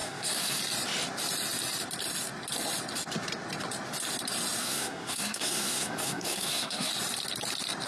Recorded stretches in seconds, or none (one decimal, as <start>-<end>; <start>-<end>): 0.6-4.6; 6.9-7.9